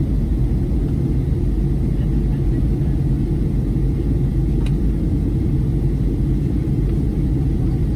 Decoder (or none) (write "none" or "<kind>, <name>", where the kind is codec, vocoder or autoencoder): none